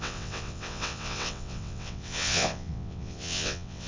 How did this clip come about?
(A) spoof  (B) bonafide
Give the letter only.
A